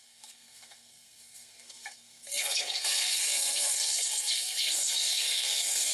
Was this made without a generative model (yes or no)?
no